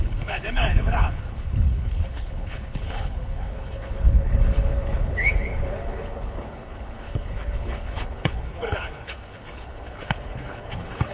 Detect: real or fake fake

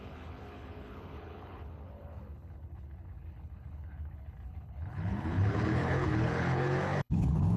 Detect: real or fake fake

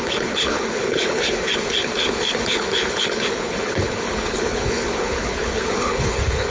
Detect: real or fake fake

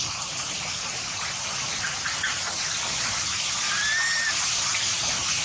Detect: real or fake real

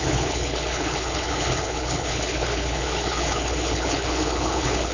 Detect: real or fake fake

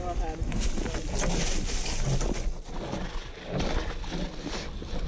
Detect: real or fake real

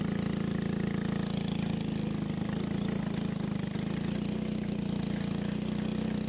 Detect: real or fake real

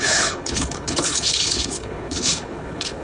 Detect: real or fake fake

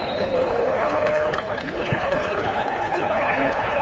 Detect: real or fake fake